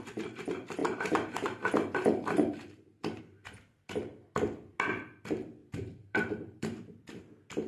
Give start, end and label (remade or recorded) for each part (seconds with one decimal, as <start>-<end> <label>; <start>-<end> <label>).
0.0-0.8 recorded; 0.8-3.2 remade; 3.2-5.6 recorded; 5.6-7.2 remade; 7.2-7.7 recorded

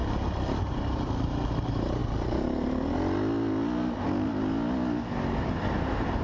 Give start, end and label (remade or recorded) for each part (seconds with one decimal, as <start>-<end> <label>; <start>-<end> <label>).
0.0-0.6 recorded; 0.6-2.0 remade; 2.0-5.6 recorded; 5.6-6.2 remade